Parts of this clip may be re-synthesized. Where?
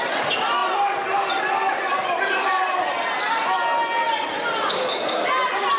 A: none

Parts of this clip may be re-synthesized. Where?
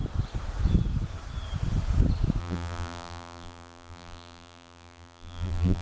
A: 2.4-5.8 (vocoder, BigVGAN v2)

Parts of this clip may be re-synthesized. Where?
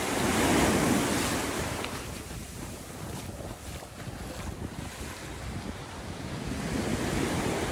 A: 1.4-3.2 (vocoder, BigVGAN v2)